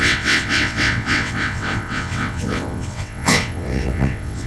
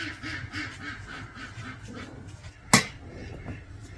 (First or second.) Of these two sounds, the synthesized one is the first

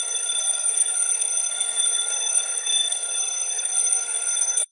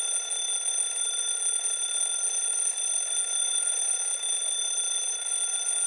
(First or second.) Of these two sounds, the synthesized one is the first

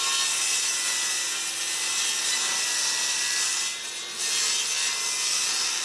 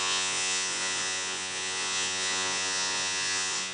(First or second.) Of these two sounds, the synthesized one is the second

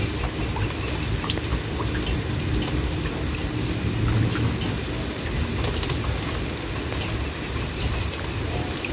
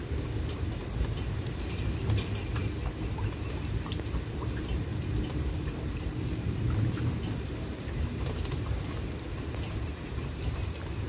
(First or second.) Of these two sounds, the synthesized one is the second